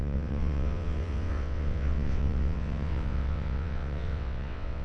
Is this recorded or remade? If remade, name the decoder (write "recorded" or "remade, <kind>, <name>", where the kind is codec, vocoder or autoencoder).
remade, vocoder, WaveNeXt